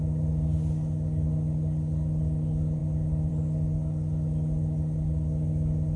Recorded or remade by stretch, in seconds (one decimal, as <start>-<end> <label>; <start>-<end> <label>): 0.0-6.0 recorded